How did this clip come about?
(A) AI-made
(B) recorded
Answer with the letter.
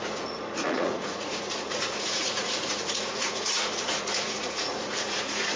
A